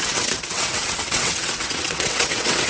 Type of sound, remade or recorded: remade